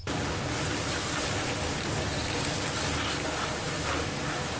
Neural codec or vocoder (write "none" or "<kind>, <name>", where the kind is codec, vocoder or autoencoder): none